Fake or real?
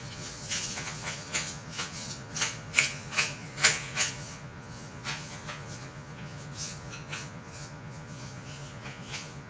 fake